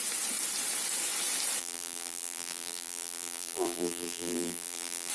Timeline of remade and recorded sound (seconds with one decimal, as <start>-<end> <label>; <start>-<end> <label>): 0.0-1.6 recorded; 1.6-5.1 remade